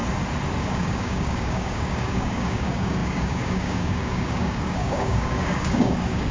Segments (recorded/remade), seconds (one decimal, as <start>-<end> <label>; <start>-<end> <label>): 0.0-0.6 recorded; 0.6-6.3 remade